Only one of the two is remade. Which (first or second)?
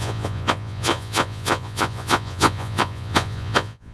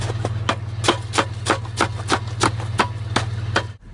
first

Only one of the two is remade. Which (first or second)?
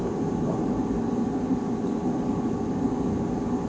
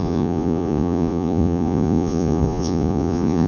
second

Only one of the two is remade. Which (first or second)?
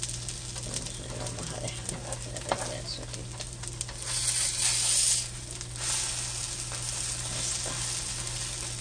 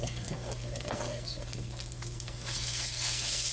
second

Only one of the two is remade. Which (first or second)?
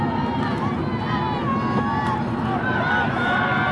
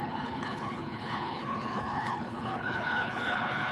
second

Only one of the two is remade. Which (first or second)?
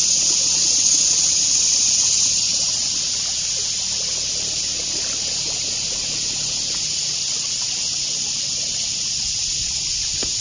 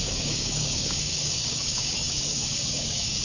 second